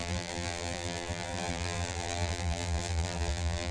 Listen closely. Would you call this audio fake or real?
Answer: fake